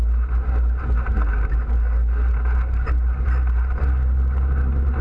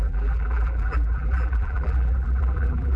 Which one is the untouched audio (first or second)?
first